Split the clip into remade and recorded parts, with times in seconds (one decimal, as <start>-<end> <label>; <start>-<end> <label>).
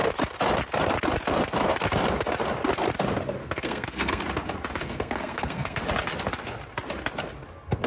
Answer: 0.0-3.4 recorded; 3.4-4.2 remade; 4.2-4.8 recorded; 4.8-5.8 remade; 5.8-7.9 recorded